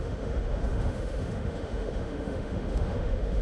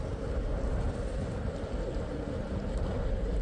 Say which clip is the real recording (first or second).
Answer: second